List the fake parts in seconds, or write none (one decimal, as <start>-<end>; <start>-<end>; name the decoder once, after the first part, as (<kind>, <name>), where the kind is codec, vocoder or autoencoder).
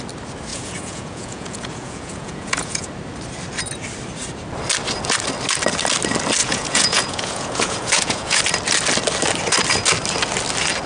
0.5-2.9 (vocoder, Vocos); 6.4-8.4